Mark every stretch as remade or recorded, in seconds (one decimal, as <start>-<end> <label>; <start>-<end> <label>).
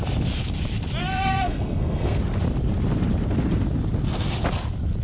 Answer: 0.0-1.0 recorded; 1.0-2.2 remade; 2.2-5.0 recorded